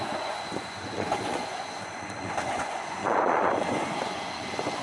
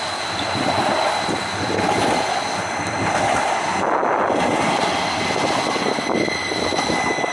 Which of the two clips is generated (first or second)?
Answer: first